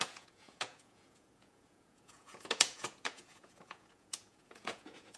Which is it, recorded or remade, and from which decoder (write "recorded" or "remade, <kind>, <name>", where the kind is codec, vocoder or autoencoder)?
remade, vocoder, Vocos